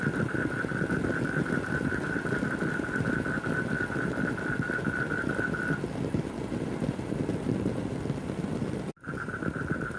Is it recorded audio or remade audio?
recorded